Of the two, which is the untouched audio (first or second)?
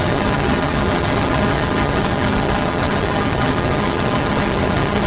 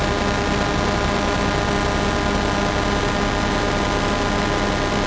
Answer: second